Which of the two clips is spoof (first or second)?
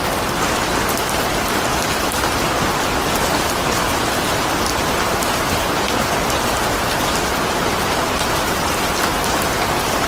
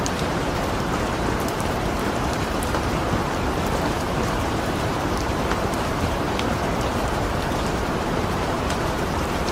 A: second